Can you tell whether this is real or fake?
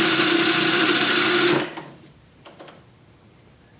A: real